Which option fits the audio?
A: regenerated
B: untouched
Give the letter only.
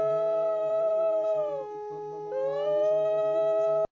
B